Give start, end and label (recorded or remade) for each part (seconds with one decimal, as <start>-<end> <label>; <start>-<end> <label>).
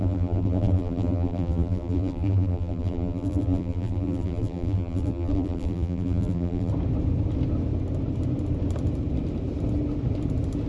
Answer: 0.0-6.7 remade; 6.7-10.7 recorded